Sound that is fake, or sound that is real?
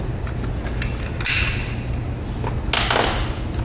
real